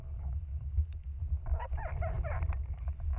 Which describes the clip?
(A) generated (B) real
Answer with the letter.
B